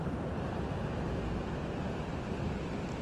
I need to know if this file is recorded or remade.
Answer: recorded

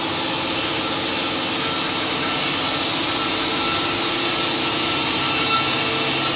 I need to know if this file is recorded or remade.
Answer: recorded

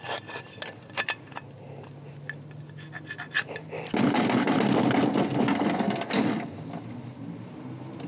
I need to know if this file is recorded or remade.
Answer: recorded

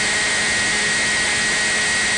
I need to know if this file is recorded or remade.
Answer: recorded